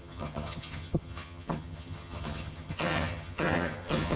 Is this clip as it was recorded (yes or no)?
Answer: no